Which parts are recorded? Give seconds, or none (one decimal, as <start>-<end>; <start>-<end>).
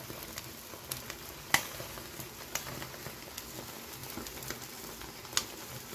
0.0-5.9